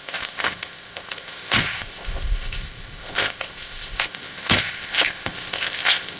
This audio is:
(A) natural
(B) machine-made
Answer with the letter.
B